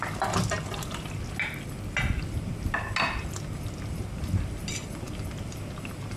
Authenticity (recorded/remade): recorded